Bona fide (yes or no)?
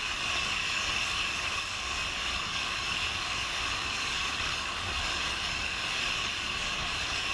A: no